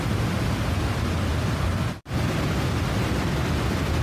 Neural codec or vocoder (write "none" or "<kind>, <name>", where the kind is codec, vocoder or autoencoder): none